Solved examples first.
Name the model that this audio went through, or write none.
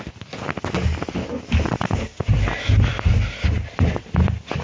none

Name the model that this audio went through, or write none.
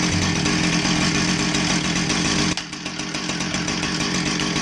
none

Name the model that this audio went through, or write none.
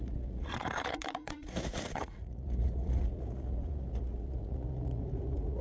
vocoder, Vocos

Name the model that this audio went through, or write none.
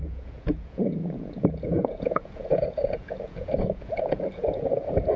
vocoder, Vocos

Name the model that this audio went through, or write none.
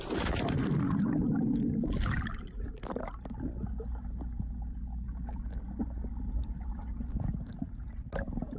none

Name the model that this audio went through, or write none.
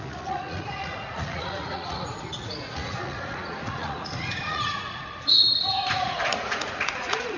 vocoder, Vocos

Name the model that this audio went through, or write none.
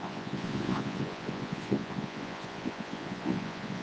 vocoder, Vocos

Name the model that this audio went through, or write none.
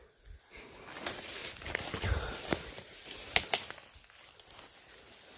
none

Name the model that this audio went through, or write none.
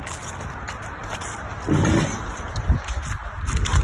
none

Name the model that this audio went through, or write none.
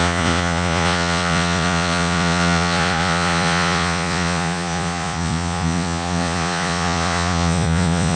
vocoder, Vocos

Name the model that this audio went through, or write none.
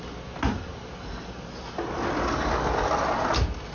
none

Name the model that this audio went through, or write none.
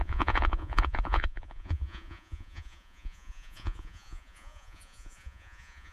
vocoder, Vocos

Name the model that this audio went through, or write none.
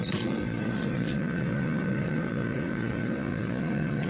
vocoder, Vocos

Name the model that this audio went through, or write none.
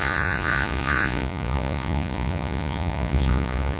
vocoder, Vocos